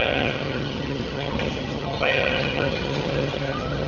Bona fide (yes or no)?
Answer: no